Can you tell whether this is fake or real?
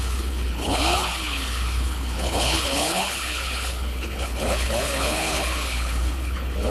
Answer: fake